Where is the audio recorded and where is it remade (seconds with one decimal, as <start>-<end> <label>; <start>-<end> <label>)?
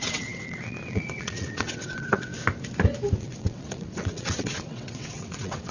0.0-2.3 remade; 2.3-3.2 recorded; 3.2-5.7 remade